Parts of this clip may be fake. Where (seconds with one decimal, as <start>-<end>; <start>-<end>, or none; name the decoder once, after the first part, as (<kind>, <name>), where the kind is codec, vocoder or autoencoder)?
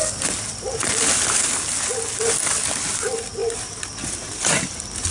none